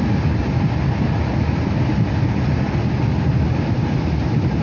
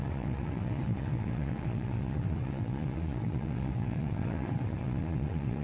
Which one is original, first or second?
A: first